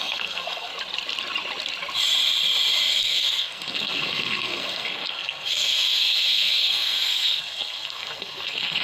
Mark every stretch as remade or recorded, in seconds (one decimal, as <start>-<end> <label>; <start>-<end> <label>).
0.0-0.7 remade; 0.7-2.9 recorded; 2.9-8.8 remade